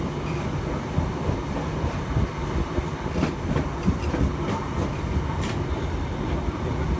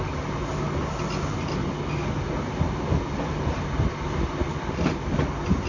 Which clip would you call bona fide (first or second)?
second